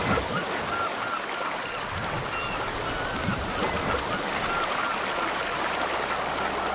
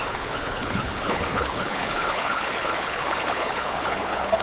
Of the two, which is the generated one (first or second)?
second